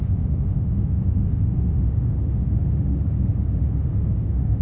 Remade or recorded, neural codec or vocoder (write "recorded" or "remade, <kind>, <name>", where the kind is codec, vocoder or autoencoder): remade, autoencoder, DAC-VAE